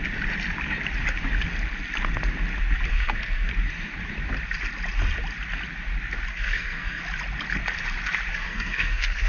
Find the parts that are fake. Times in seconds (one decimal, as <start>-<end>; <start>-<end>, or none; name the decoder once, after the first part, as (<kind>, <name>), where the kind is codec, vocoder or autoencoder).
2.9-3.5 (codec, SNAC); 6.3-7.0; 8.3-9.3